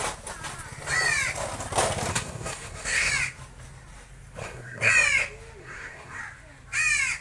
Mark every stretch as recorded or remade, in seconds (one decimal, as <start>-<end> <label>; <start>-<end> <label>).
0.0-2.1 recorded; 2.1-3.1 remade; 3.1-4.4 recorded; 4.4-4.9 remade; 4.9-5.6 recorded; 5.6-6.2 remade; 6.2-7.2 recorded